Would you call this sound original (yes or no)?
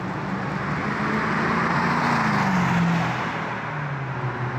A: yes